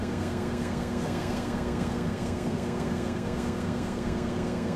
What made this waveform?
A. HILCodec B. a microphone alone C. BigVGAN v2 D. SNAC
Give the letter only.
D